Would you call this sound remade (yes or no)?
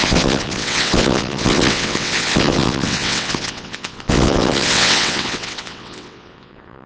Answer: yes